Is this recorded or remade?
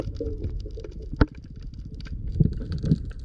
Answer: remade